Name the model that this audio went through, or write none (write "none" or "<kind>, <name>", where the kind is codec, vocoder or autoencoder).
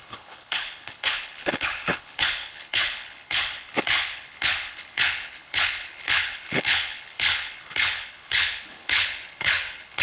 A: codec, HILCodec